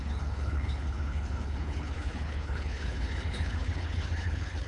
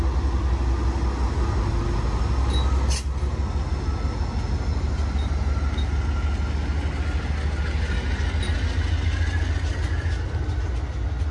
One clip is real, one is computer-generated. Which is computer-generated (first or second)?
first